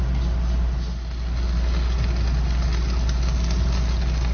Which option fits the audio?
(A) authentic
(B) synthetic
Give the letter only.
A